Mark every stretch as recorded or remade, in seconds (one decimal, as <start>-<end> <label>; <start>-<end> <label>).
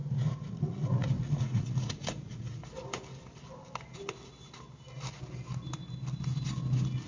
0.0-2.6 remade; 2.6-7.1 recorded